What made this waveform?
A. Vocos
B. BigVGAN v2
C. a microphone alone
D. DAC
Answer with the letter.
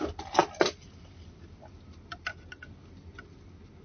C